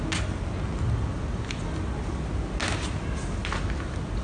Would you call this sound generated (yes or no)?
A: no